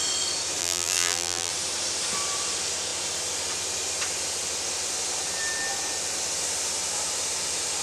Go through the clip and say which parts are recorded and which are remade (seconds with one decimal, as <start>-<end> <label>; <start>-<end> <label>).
0.0-0.6 recorded; 0.6-1.5 remade; 1.5-7.8 recorded